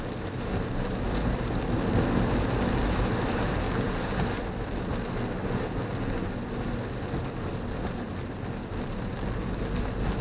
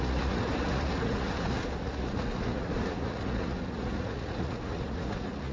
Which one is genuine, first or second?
first